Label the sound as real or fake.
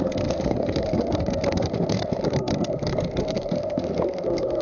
fake